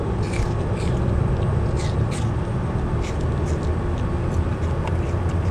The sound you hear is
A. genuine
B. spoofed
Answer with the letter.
A